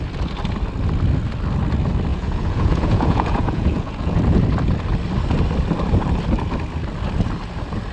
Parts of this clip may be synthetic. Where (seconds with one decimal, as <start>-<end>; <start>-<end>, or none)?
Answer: 2.1-4.2